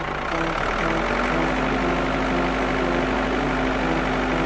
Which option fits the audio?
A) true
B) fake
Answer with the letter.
A